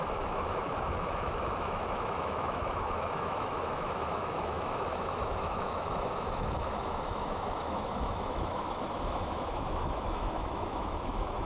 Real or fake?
fake